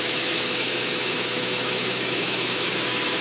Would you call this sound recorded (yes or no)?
no